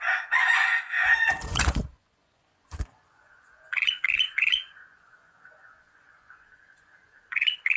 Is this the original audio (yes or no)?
no